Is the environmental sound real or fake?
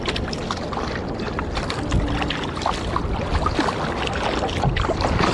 real